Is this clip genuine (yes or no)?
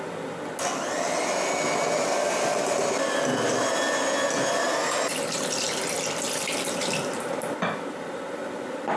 yes